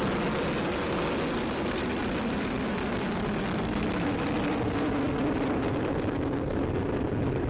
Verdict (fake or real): real